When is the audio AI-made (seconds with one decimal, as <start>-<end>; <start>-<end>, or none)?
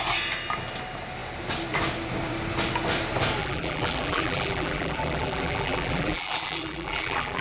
3.4-7.4